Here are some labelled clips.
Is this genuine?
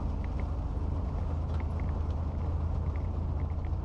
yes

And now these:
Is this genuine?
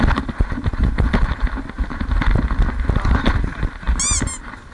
yes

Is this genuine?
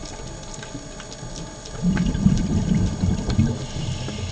yes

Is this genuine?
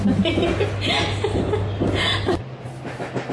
yes